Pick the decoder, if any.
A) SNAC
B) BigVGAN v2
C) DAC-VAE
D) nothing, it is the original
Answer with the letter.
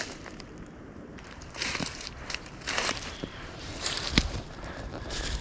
B